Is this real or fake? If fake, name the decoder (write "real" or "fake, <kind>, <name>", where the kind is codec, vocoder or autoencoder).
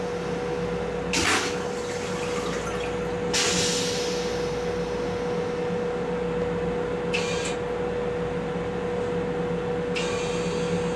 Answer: real